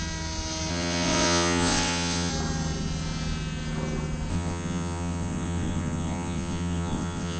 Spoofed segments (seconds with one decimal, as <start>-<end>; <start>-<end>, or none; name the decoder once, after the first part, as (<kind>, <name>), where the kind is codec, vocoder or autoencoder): 0.7-2.3 (vocoder, WaveNeXt); 4.3-7.4